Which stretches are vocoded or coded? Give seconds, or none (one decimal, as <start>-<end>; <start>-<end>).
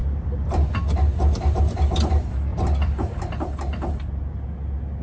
0.0-1.9; 2.5-3.3